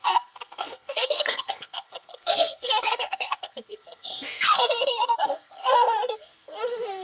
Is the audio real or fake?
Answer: fake